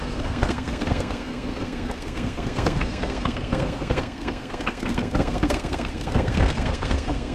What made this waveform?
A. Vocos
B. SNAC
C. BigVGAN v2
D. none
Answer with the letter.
B